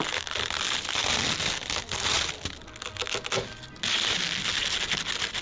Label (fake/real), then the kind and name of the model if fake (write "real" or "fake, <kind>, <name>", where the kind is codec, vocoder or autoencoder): real